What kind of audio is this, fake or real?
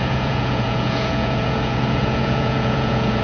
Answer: fake